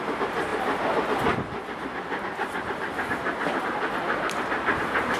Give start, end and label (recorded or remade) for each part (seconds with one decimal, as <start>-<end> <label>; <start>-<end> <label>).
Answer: 0.0-5.2 recorded